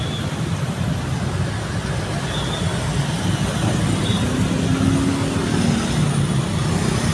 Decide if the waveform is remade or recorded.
recorded